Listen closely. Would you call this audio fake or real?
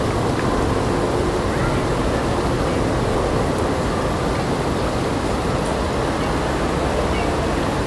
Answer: real